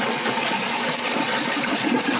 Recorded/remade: remade